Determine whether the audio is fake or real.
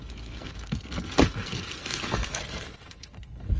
fake